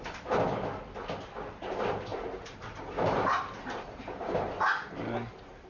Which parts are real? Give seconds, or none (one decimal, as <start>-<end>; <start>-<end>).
0.0-2.1